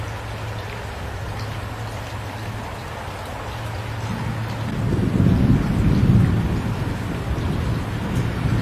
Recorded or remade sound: recorded